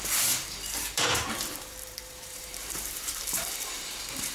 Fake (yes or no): yes